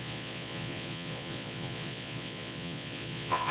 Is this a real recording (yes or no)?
no